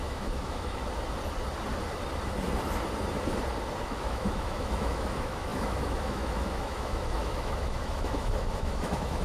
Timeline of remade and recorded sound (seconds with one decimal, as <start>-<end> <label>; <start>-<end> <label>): 0.0-0.8 remade; 0.8-3.8 recorded; 3.8-9.2 remade